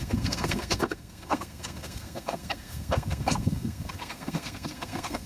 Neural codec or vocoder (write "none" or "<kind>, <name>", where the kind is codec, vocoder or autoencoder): codec, SNAC